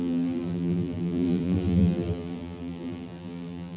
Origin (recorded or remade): remade